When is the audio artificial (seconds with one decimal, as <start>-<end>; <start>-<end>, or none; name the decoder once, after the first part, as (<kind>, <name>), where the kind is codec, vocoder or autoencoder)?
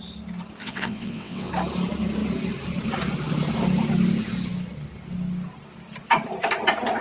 0.6-1.5 (vocoder, WaveNeXt)